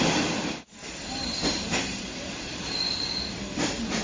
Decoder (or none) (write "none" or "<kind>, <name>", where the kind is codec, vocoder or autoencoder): vocoder, BigVGAN v2